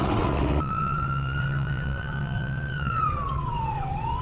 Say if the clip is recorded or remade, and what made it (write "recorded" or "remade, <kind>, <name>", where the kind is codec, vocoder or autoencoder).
remade, vocoder, WaveNeXt